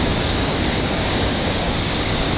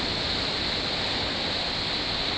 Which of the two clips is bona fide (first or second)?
second